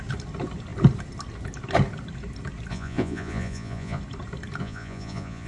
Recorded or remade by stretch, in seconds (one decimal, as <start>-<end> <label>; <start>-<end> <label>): 0.0-2.7 recorded; 2.7-4.0 remade; 4.0-4.6 recorded; 4.6-5.5 remade